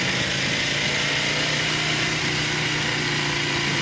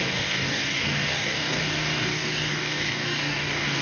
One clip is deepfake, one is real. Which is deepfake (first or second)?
second